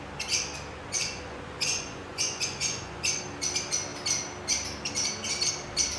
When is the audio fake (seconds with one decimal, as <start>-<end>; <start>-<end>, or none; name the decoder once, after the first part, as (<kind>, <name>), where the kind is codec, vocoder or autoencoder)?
0.7-3.2 (vocoder, Vocos)